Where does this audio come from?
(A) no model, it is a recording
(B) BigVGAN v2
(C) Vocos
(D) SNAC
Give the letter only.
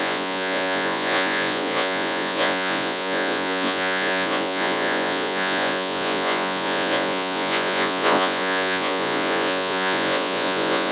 C